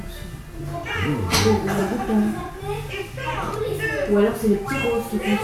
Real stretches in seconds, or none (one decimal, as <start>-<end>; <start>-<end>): 0.0-5.4